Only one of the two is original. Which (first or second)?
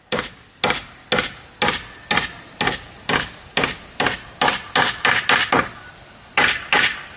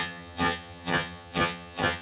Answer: first